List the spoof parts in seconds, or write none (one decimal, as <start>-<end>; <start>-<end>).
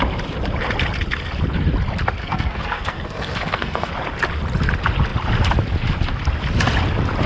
2.2-3.9